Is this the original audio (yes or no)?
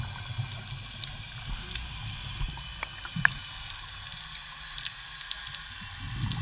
yes